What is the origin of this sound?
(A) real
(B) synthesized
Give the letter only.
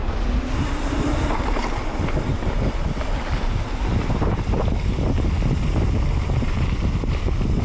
A